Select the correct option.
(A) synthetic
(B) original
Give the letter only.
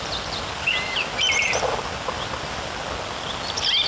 B